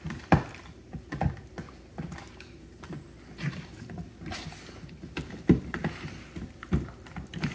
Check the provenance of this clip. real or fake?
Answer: real